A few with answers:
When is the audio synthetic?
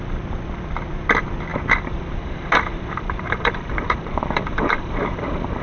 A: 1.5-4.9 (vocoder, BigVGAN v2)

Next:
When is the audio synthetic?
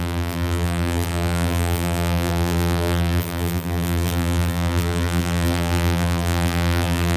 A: 0.0-7.2 (vocoder, BigVGAN v2)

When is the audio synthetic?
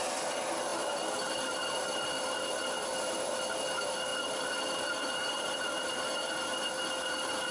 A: none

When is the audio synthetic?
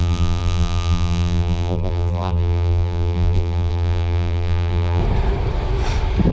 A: 0.0-5.0 (vocoder, BigVGAN v2)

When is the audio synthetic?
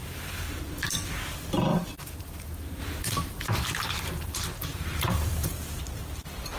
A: 0.0-0.6 (vocoder, BigVGAN v2); 1.7-2.8; 4.7-5.8